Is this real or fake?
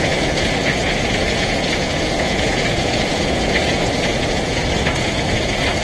fake